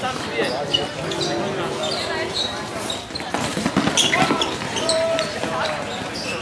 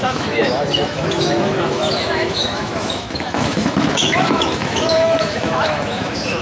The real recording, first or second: first